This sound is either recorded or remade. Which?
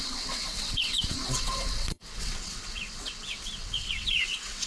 remade